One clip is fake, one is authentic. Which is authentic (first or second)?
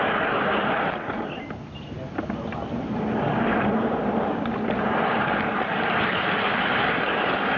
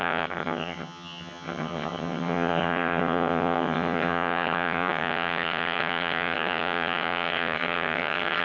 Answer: first